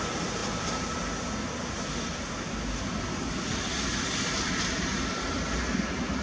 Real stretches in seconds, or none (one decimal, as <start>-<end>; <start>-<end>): 0.0-6.2